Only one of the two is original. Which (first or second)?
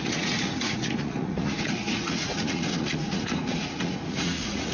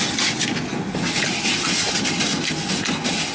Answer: second